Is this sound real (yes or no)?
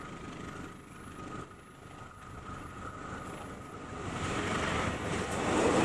yes